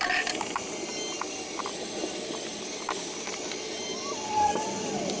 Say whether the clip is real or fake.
real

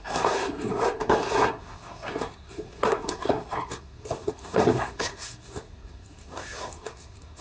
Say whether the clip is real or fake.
fake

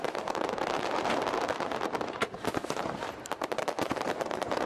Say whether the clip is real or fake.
fake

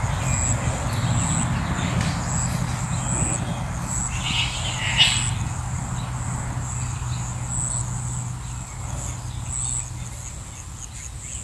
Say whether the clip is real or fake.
real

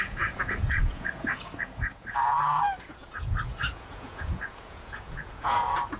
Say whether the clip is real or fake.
fake